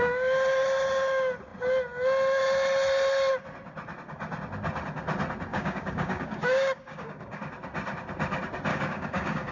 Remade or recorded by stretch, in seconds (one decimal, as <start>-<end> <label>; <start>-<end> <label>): 0.0-5.5 recorded; 5.5-7.4 remade; 7.4-8.7 recorded; 8.7-9.5 remade